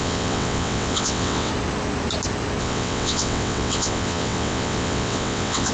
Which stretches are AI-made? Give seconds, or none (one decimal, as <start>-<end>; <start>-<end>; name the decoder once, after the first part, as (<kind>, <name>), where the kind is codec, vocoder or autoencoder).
0.0-1.5 (vocoder, WaveNeXt); 2.6-5.7

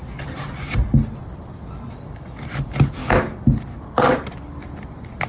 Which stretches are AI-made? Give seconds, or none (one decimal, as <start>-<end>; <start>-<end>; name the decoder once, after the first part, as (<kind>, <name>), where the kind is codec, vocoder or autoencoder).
none